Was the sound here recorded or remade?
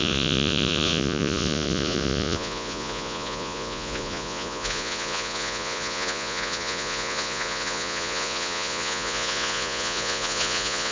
remade